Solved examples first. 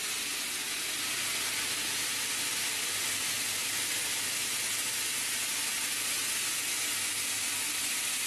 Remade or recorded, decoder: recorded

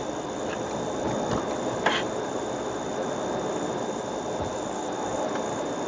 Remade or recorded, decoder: recorded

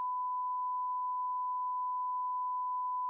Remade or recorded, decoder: recorded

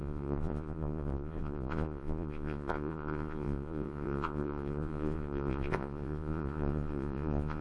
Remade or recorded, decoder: remade, vocoder, Vocos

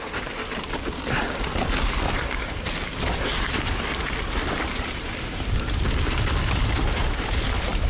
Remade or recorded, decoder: recorded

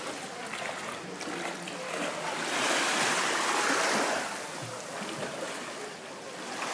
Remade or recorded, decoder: recorded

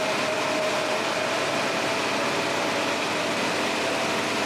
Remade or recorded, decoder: recorded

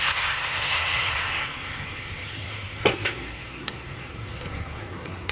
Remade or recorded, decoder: remade, codec, SNAC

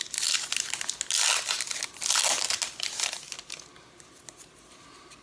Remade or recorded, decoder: recorded